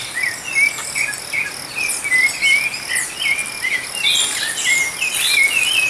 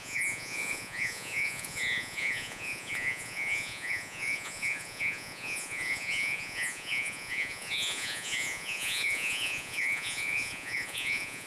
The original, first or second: first